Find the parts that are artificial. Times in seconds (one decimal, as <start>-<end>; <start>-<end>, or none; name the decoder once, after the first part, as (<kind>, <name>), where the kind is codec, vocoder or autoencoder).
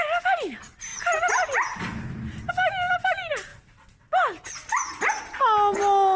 none